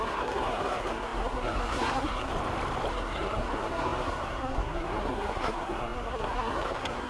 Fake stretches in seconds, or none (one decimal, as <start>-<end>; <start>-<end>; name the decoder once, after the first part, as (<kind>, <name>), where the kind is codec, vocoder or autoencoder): 0.0-2.3 (codec, SNAC); 2.9-7.1